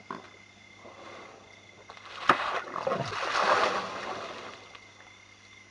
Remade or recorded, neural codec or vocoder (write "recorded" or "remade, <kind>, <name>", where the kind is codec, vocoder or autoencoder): recorded